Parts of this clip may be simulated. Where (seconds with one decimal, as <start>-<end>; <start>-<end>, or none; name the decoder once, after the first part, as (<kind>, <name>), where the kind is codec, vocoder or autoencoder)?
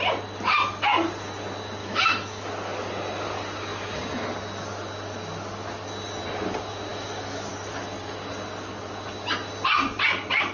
1.8-2.5 (autoencoder, DAC-VAE); 6.9-7.5